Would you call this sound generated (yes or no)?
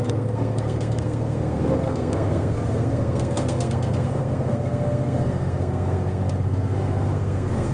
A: yes